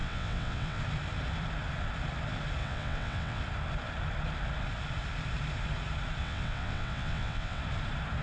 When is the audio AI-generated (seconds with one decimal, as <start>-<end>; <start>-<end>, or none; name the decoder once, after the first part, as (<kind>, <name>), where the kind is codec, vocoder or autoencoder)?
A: 0.0-0.8 (vocoder, WaveNeXt); 2.6-3.4; 6.2-7.6